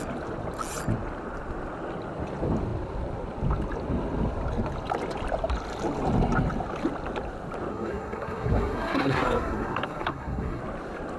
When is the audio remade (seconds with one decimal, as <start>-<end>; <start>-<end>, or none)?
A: 7.7-10.6